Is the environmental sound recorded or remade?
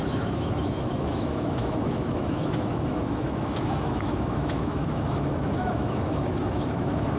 remade